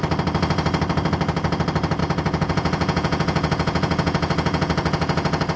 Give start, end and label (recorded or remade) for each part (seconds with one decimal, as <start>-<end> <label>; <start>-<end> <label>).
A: 0.0-2.0 recorded; 2.0-5.6 remade